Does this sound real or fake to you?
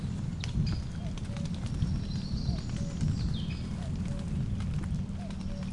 real